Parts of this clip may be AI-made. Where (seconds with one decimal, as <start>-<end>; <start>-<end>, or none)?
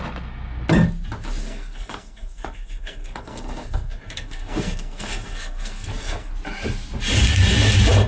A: 1.4-6.3